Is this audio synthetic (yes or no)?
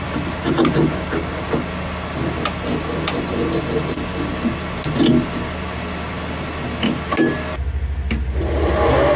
no